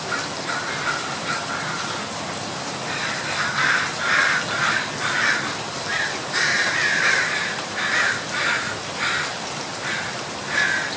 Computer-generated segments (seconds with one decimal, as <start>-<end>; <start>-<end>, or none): 5.9-7.8; 9.7-10.3